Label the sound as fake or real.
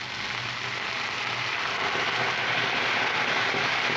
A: real